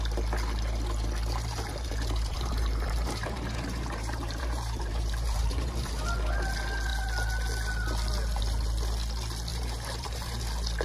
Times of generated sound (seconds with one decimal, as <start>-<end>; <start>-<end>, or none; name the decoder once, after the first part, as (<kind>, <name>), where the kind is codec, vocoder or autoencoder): 1.7-5.9 (vocoder, BigVGAN v2); 9.5-10.4